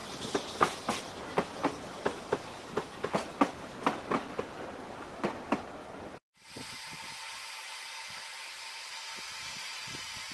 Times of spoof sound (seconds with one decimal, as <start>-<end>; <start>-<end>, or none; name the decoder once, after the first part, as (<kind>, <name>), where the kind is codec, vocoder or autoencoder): none